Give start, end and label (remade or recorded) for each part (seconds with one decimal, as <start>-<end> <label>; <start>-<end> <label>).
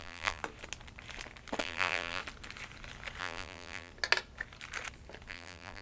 0.0-0.4 remade; 0.4-1.6 recorded; 1.6-2.2 remade; 2.2-3.2 recorded; 3.2-3.9 remade; 3.9-5.3 recorded; 5.3-5.8 remade